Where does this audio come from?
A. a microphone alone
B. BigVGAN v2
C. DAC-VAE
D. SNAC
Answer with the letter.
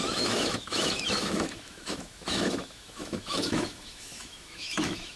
C